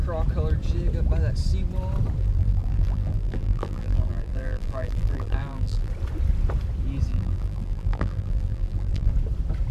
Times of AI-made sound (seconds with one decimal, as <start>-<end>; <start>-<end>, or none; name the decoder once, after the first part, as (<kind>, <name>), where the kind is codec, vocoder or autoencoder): 2.2-5.9 (vocoder, BigVGAN v2); 7.1-9.1